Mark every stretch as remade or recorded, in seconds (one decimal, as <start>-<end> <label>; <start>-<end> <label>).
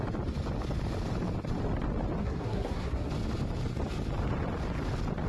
0.0-2.2 recorded; 2.2-3.1 remade; 3.1-5.3 recorded